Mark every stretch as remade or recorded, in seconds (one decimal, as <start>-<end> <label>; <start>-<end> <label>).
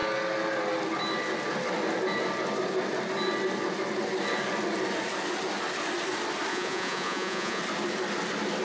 0.0-6.5 recorded; 6.5-7.6 remade; 7.6-8.6 recorded